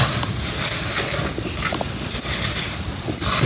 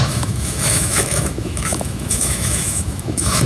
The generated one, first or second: second